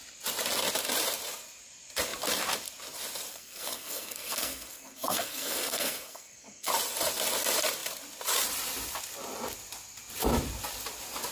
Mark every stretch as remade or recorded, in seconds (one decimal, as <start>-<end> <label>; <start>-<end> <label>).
0.0-3.3 recorded; 3.3-6.7 remade; 6.7-11.3 recorded